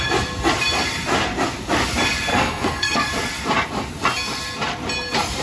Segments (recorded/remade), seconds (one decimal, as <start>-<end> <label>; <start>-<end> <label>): 0.0-2.3 recorded; 2.3-3.1 remade; 3.1-5.4 recorded